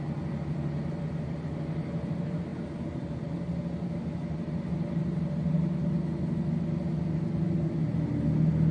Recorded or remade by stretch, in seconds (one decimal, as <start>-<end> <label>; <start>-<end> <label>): 0.0-8.7 recorded